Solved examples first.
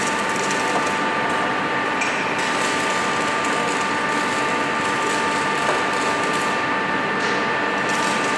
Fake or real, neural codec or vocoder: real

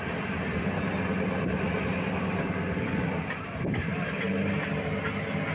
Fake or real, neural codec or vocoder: real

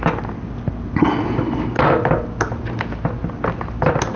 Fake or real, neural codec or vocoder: real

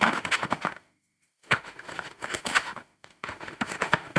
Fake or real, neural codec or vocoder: fake, autoencoder, DAC-VAE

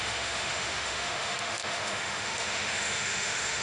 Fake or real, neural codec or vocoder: fake, autoencoder, DAC-VAE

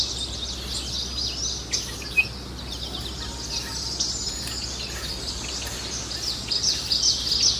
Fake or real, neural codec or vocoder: real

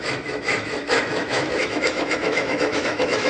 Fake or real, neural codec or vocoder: fake, autoencoder, DAC-VAE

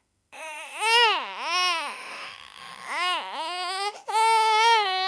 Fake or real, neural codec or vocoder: fake, autoencoder, DAC-VAE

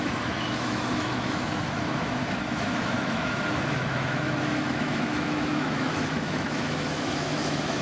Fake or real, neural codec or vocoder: fake, autoencoder, DAC-VAE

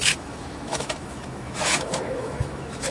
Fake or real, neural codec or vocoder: fake, autoencoder, DAC-VAE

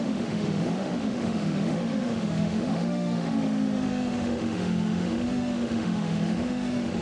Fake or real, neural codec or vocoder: fake, autoencoder, DAC-VAE